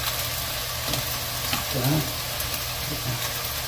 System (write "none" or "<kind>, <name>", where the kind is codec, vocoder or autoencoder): none